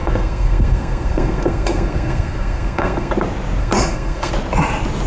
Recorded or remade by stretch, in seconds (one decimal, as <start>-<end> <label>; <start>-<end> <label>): 0.0-3.1 remade; 3.1-3.6 recorded; 3.6-4.3 remade; 4.3-5.1 recorded